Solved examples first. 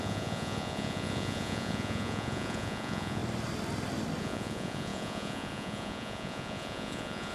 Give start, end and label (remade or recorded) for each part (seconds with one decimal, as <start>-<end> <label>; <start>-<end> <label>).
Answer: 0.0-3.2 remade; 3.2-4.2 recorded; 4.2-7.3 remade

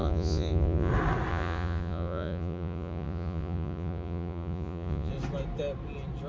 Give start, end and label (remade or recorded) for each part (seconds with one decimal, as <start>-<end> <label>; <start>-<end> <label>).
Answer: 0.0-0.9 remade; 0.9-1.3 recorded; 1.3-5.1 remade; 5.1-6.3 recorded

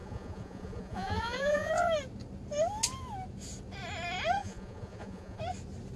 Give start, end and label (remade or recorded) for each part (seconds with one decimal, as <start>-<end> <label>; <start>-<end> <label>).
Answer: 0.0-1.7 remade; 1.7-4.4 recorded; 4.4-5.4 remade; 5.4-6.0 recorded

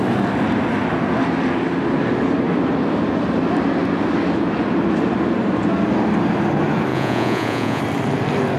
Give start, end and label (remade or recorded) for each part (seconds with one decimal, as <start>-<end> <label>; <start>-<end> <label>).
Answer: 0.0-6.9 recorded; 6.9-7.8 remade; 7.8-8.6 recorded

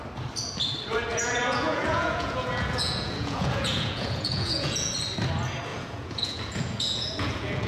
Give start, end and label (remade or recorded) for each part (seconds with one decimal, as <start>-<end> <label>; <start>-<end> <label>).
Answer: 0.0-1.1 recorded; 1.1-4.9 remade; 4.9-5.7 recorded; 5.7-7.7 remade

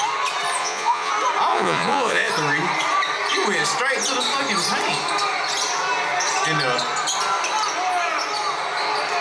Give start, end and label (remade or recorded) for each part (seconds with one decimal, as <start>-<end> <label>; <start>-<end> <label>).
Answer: 0.0-0.6 recorded; 0.6-1.1 remade; 1.1-1.5 recorded; 1.5-2.3 remade; 2.3-9.2 recorded

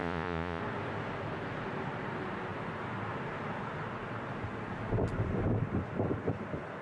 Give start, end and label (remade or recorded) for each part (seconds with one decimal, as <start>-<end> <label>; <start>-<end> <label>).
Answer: 0.0-0.6 remade; 0.6-6.8 recorded

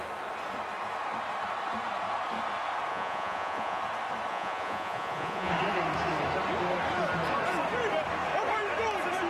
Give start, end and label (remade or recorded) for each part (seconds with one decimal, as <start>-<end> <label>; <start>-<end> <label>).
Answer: 0.0-2.9 recorded; 2.9-3.8 remade; 3.8-4.3 recorded; 4.3-5.5 remade; 5.5-9.3 recorded